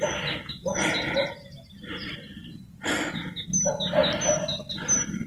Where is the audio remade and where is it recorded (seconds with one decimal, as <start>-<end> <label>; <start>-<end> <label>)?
0.0-5.3 recorded